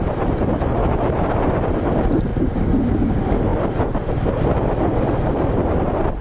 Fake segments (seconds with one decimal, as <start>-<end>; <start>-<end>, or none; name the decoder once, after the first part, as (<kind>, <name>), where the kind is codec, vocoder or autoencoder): 0.8-1.4 (vocoder, BigVGAN v2); 2.3-3.1; 3.5-4.4